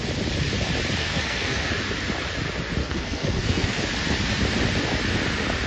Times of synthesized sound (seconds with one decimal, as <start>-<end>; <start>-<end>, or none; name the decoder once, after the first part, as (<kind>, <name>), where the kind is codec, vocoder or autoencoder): 1.0-1.7 (codec, SNAC); 2.8-3.8